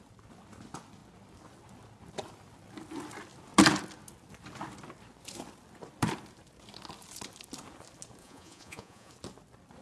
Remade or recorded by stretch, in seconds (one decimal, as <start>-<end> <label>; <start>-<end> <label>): 0.0-8.2 recorded; 8.2-9.1 remade; 9.1-9.8 recorded